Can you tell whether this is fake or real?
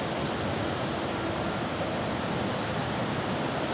real